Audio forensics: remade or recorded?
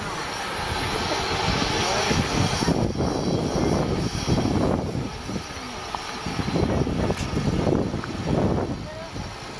recorded